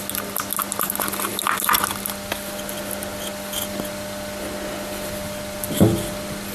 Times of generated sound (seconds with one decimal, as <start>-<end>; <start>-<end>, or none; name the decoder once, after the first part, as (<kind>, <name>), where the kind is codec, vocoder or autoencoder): none